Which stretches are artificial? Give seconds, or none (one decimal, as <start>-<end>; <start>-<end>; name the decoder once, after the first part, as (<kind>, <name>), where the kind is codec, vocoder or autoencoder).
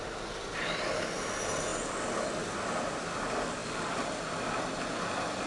0.4-0.9 (vocoder, BigVGAN v2); 3.6-4.3